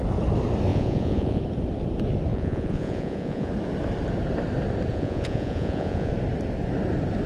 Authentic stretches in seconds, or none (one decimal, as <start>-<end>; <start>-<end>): 0.0-0.7; 1.4-2.3; 3.5-4.9; 6.1-7.3